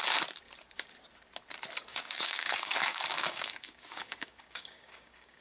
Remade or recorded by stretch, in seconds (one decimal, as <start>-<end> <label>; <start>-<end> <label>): 0.0-1.9 recorded; 1.9-5.4 remade